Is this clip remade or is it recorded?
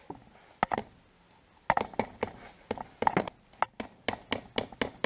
recorded